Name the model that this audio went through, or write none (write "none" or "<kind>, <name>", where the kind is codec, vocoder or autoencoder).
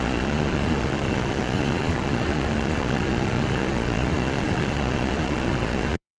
vocoder, Vocos